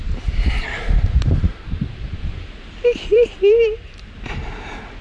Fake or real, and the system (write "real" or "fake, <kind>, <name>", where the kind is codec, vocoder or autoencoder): fake, vocoder, BigVGAN v2